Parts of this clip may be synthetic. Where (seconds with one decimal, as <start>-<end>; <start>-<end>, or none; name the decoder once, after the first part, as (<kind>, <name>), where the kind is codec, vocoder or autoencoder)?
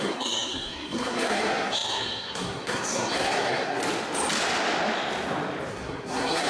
0.0-3.8 (codec, SNAC); 5.7-6.5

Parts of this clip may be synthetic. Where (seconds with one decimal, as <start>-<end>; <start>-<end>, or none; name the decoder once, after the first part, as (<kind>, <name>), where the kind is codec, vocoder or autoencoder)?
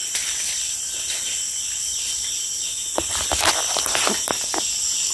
none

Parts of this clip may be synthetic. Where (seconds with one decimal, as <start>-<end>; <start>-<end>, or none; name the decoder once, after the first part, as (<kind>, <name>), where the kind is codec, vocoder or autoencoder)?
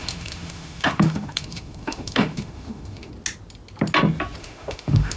0.0-3.1 (autoencoder, DAC-VAE); 4.4-5.2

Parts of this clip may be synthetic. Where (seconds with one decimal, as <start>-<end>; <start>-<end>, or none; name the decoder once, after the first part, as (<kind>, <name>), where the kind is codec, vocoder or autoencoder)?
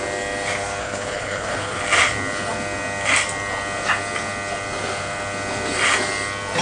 0.8-1.8 (codec, HILCodec)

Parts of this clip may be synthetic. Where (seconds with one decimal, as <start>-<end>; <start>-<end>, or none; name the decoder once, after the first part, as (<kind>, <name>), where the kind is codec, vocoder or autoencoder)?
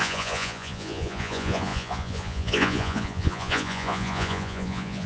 0.0-5.1 (vocoder, Vocos)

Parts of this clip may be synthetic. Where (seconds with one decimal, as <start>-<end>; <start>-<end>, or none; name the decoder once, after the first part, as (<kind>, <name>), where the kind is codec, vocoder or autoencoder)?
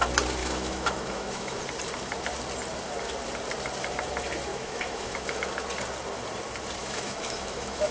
0.4-1.6 (autoencoder, DAC-VAE); 4.5-5.3; 6.8-7.9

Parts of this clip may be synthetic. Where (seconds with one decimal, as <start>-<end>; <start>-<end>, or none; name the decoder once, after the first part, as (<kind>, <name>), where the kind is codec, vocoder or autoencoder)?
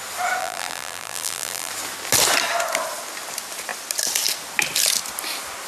0.4-1.7 (vocoder, BigVGAN v2)